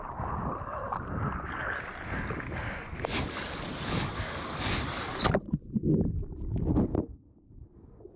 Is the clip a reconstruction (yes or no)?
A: no